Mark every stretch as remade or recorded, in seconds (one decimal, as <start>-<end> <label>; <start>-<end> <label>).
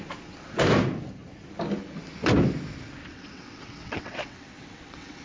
0.0-3.0 recorded; 3.0-5.2 remade